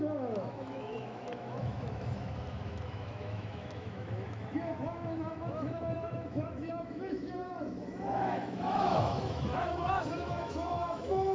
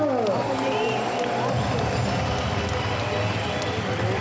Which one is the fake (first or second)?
first